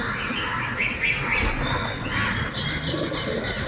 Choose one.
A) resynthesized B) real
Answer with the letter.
B